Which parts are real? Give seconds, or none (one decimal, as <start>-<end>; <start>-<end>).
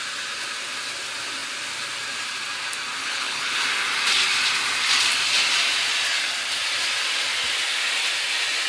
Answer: 0.0-3.0; 3.6-8.7